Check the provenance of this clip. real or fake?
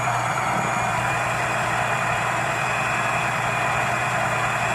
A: fake